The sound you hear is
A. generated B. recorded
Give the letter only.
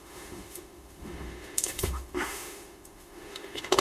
A